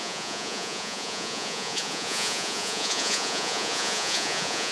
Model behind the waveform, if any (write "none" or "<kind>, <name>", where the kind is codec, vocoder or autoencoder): vocoder, Vocos